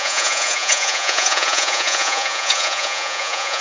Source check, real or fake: fake